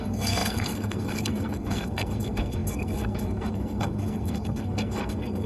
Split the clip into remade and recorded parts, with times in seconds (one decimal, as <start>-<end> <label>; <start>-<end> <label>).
0.0-5.5 remade